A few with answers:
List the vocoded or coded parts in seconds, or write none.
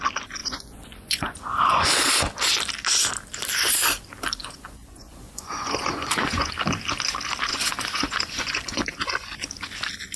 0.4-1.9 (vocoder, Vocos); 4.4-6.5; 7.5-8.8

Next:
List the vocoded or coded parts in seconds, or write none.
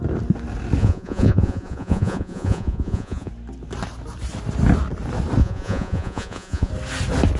0.8-3.3 (vocoder, Vocos); 5.4-6.7